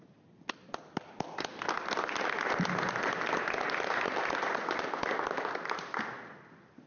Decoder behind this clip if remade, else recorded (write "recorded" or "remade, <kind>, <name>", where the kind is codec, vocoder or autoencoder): recorded